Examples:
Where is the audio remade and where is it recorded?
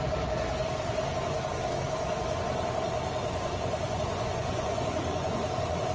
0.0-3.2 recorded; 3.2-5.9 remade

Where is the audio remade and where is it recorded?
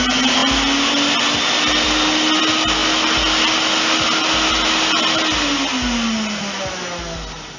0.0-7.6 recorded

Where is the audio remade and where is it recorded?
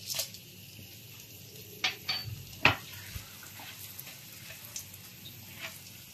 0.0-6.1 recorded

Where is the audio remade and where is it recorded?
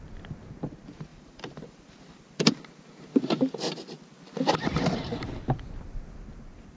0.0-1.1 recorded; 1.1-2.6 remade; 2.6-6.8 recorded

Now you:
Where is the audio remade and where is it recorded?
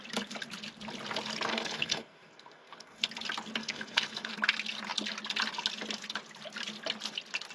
0.0-1.5 recorded; 1.5-3.1 remade; 3.1-3.6 recorded; 3.6-4.3 remade; 4.3-7.5 recorded